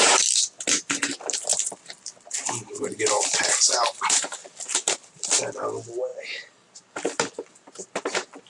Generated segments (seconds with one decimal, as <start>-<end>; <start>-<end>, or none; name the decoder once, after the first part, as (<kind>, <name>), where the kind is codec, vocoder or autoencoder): 1.5-5.4 (vocoder, BigVGAN v2); 6.1-8.0